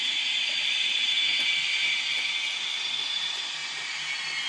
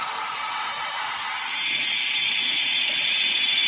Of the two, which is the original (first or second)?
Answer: first